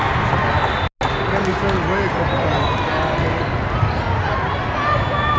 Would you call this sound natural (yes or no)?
yes